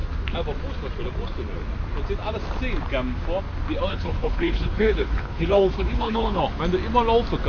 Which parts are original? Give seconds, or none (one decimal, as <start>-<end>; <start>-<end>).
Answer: 0.0-3.9; 6.4-7.5